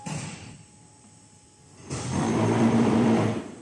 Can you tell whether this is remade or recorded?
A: remade